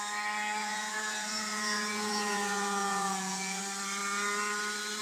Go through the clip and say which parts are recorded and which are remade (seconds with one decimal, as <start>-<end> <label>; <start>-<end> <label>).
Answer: 0.0-0.6 recorded; 0.6-3.6 remade; 3.6-5.0 recorded